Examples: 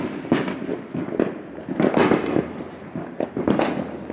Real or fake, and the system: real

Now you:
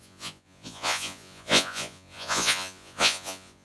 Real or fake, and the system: fake, vocoder, Vocos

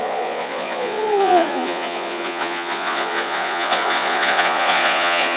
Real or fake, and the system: fake, vocoder, Vocos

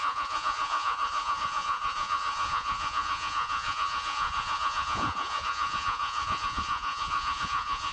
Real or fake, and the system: fake, vocoder, Vocos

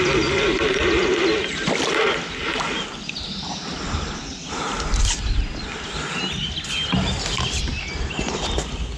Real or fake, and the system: real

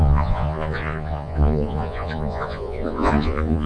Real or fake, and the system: fake, vocoder, Vocos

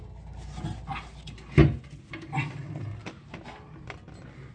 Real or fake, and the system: real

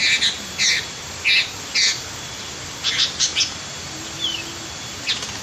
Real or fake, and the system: real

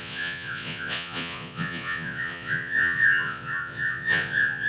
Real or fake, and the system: fake, vocoder, Vocos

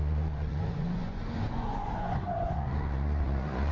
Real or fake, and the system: fake, vocoder, Vocos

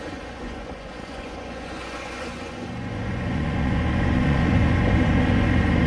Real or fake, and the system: fake, vocoder, Vocos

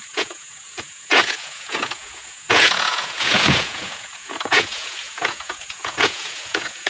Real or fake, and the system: fake, vocoder, Vocos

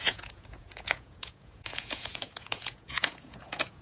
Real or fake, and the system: fake, vocoder, Vocos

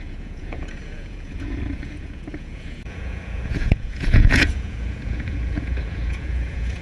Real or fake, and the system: fake, vocoder, Vocos